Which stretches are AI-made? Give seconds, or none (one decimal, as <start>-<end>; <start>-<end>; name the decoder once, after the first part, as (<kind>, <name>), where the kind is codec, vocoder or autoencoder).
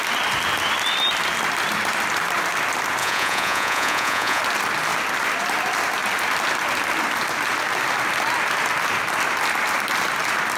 3.0-4.4 (vocoder, Vocos)